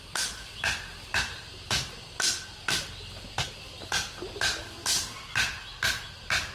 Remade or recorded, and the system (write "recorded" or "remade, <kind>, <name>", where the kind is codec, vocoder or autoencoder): recorded